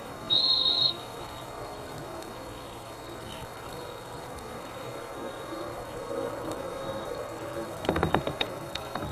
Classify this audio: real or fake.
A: fake